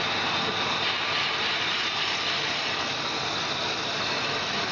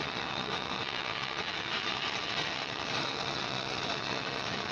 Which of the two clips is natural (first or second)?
first